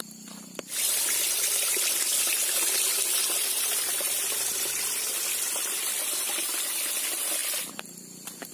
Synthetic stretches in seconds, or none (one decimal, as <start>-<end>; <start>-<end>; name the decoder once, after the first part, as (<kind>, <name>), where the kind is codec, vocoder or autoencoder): 0.0-5.1 (vocoder, BigVGAN v2); 6.1-8.5